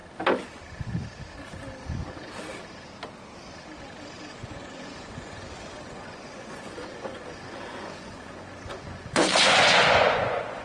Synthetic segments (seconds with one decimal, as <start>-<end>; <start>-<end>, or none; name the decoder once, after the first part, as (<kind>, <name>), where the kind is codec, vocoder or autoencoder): 4.3-10.6 (vocoder, Vocos)